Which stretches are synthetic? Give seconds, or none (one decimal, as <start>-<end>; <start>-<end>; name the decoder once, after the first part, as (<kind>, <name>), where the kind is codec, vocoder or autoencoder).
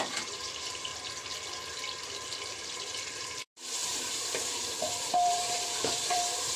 0.0-0.9 (vocoder, BigVGAN v2); 2.5-6.6